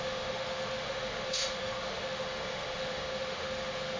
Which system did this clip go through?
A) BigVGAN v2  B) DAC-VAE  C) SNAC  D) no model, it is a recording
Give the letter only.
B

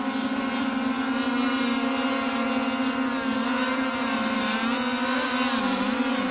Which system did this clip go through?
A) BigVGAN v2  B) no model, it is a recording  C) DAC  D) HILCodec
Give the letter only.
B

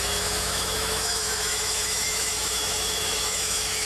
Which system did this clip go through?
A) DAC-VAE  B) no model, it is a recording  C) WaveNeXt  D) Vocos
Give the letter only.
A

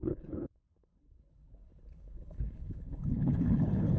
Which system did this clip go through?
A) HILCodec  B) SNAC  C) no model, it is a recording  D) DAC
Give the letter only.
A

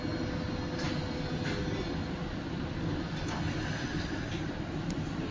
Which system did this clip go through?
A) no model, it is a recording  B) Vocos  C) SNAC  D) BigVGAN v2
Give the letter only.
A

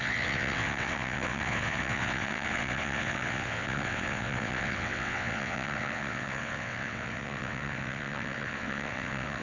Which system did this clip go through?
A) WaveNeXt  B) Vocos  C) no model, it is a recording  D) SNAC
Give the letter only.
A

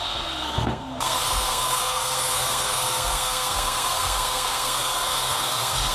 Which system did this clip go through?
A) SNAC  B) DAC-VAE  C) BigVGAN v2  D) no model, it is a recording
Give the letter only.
A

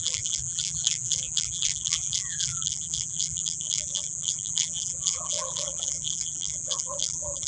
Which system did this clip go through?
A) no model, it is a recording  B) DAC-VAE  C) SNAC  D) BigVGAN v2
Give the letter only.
D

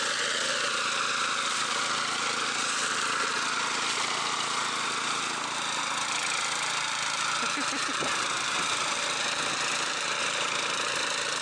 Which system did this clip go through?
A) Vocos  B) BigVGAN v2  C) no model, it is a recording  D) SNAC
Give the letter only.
C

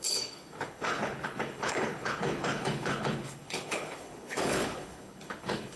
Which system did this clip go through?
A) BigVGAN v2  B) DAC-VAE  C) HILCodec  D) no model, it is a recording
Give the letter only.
C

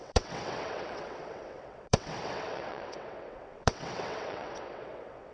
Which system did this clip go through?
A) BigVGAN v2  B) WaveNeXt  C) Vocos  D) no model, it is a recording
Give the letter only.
B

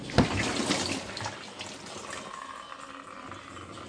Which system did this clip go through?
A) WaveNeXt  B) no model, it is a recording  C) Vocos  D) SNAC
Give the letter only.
B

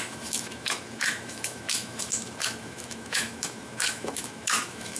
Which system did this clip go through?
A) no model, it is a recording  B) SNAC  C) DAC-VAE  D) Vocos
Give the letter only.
C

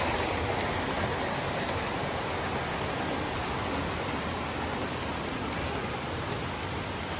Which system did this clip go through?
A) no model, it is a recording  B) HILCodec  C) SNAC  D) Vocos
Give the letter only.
A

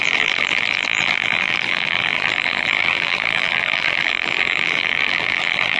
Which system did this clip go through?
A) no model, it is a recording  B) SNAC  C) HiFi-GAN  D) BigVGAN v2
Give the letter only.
D